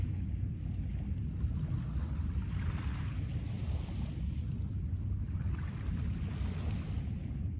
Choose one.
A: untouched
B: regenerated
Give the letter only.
A